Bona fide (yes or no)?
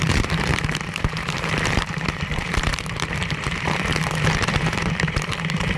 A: no